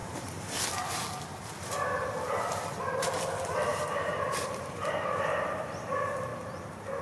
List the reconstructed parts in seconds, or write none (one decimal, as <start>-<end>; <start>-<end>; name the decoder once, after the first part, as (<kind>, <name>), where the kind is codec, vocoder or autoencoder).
0.0-0.6 (vocoder, BigVGAN v2); 1.3-2.4; 3.7-5.6; 6.3-7.0